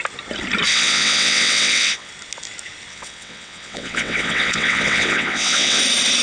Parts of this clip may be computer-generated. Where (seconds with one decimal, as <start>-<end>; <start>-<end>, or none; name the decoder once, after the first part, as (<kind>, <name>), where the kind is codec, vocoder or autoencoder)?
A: 0.7-2.1 (vocoder, WaveNeXt); 2.9-5.8